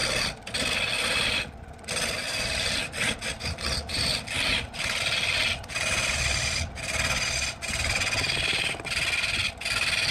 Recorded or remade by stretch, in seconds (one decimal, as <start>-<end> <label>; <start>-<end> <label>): 0.0-10.1 recorded